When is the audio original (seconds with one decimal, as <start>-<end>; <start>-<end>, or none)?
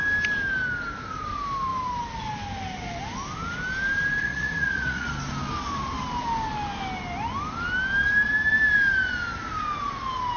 0.0-4.2; 5.1-10.4